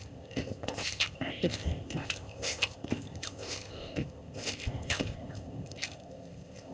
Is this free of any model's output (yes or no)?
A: no